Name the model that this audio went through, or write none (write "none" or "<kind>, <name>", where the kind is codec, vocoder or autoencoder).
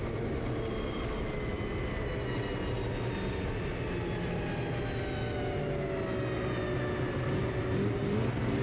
none